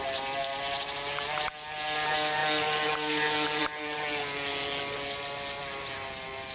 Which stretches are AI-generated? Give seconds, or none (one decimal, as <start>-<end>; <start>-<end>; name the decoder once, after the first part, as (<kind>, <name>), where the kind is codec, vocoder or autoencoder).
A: none